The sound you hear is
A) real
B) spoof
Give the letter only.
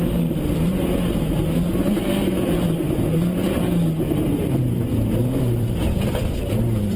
B